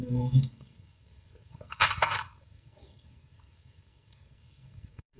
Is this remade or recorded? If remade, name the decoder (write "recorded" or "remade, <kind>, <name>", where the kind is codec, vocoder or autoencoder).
remade, codec, SNAC